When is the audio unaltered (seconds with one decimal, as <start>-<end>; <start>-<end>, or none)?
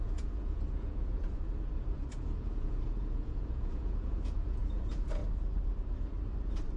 5.2-6.8